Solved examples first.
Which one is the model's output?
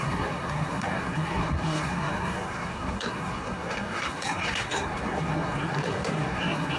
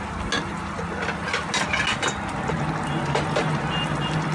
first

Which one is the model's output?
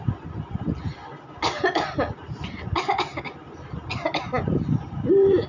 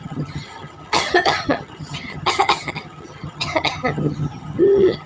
second